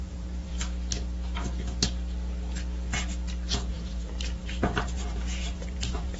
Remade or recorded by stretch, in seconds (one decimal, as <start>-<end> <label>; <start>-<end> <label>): 0.0-0.5 remade; 0.5-3.7 recorded; 3.7-6.2 remade